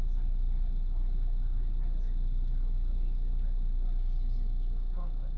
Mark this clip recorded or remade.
recorded